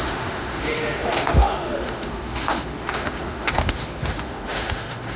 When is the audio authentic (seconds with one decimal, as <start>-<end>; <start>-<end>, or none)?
none

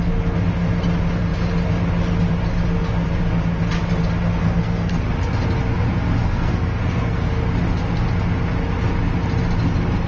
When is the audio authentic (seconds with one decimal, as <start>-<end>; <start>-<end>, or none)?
0.0-4.4; 5.0-6.2; 7.3-10.1